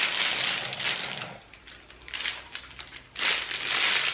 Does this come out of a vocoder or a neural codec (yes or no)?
no